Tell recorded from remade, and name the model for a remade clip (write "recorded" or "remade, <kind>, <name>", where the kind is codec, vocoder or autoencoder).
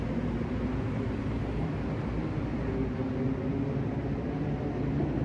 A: recorded